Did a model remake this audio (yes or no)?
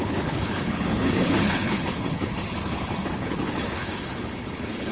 yes